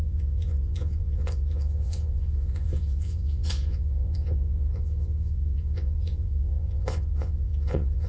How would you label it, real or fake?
fake